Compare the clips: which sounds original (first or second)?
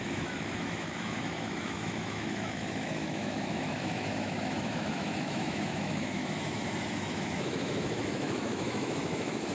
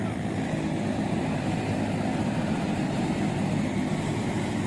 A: second